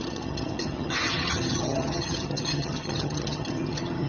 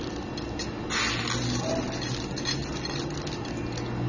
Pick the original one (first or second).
second